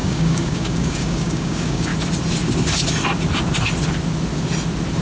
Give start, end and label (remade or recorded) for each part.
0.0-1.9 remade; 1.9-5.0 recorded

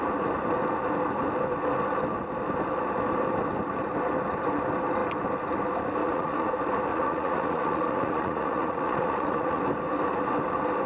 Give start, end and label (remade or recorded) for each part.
0.0-6.0 recorded; 6.0-6.5 remade; 6.5-6.9 recorded; 6.9-9.6 remade; 9.6-10.9 recorded

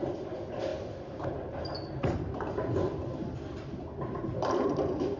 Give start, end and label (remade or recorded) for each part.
0.0-5.2 recorded